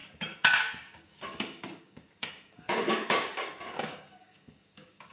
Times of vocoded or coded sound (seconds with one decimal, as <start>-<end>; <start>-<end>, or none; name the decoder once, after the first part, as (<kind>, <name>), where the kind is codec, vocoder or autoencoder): 0.0-5.1 (codec, DAC)